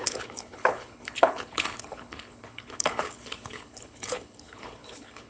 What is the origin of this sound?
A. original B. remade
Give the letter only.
B